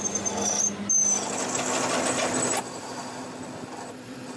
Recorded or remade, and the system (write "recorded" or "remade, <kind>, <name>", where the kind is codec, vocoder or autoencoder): recorded